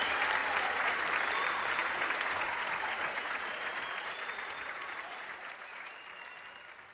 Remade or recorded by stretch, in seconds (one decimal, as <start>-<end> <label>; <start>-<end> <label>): 0.0-0.4 recorded; 0.4-1.0 remade; 1.0-1.8 recorded; 1.8-5.9 remade; 5.9-6.9 recorded